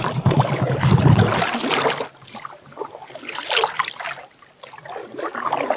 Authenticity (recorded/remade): recorded